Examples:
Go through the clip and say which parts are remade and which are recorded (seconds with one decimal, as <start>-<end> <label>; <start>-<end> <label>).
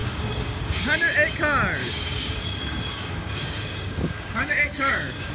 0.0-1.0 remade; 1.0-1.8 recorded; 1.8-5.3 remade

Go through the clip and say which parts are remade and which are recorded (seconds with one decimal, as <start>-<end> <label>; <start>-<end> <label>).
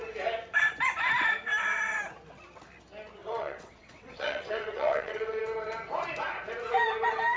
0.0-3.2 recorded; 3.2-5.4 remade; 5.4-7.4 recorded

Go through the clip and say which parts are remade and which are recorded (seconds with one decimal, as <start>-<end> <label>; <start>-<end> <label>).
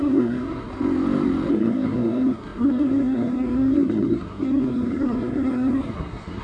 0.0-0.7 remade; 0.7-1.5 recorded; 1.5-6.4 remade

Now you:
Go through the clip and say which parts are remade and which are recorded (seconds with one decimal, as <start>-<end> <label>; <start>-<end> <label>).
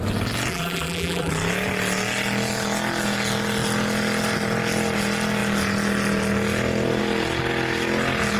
0.0-0.5 recorded; 0.5-1.3 remade; 1.3-8.4 recorded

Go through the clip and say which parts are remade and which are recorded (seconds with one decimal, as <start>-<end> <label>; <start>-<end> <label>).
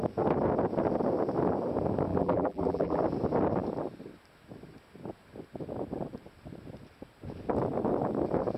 0.0-2.1 recorded; 2.1-3.0 remade; 3.0-8.6 recorded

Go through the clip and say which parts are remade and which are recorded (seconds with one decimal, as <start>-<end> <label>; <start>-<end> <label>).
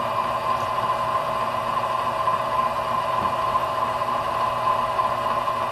0.0-3.6 recorded; 3.6-4.5 remade; 4.5-5.7 recorded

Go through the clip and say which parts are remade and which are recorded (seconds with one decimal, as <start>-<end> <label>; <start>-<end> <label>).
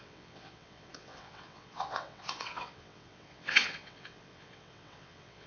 0.0-5.5 remade